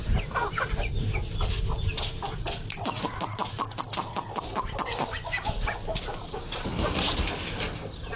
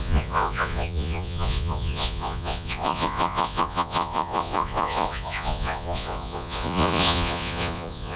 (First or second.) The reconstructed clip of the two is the second